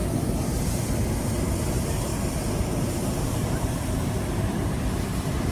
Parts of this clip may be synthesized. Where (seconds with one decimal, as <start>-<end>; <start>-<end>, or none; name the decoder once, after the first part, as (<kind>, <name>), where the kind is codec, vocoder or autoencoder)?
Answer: 1.6-2.1 (vocoder, BigVGAN v2); 2.8-5.5